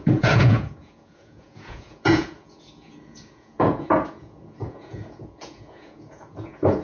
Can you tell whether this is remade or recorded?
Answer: remade